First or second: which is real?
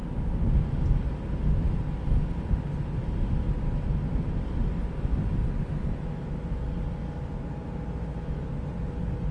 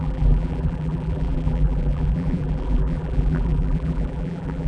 first